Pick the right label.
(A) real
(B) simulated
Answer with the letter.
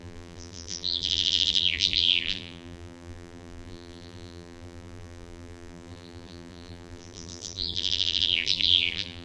B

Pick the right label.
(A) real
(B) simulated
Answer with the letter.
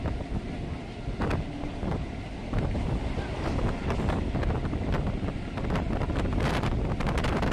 B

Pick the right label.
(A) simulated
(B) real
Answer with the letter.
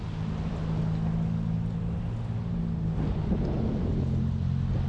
B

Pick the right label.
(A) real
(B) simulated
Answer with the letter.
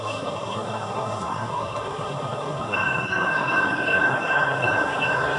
B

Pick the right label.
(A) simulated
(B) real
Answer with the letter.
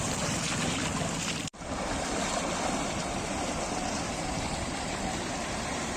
B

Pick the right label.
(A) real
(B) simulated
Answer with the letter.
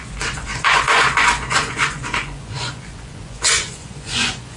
B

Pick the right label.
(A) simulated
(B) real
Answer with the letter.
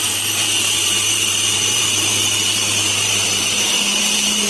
A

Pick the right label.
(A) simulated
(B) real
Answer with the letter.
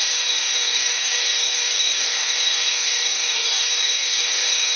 A